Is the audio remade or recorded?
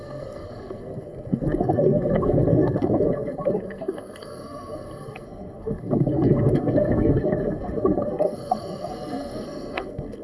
remade